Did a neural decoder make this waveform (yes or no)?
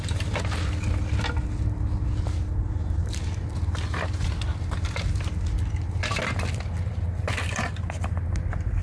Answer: no